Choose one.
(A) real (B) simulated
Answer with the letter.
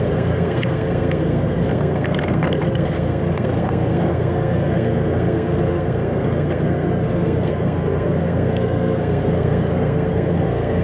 B